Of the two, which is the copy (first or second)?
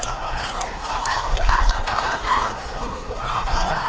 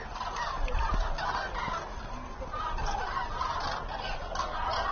first